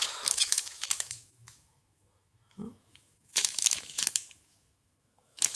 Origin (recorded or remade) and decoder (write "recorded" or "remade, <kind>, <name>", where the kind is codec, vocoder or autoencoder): remade, autoencoder, DAC-VAE